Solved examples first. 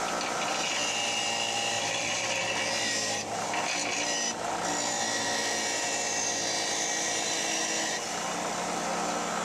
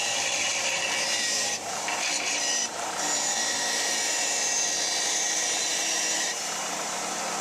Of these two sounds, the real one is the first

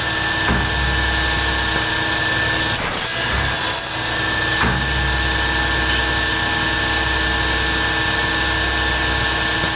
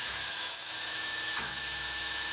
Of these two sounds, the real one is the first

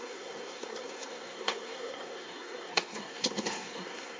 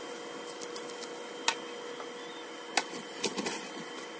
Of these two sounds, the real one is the second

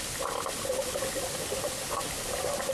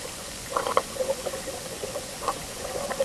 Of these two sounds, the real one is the first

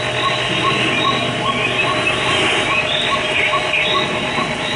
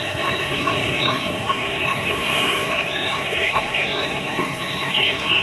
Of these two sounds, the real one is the first